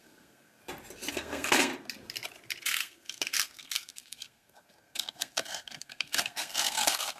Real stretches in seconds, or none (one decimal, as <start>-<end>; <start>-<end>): 0.6-1.1; 1.7-2.6